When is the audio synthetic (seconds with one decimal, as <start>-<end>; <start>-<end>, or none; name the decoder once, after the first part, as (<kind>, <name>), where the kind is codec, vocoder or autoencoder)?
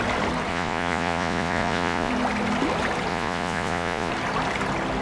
0.5-2.1 (vocoder, Vocos); 3.1-4.1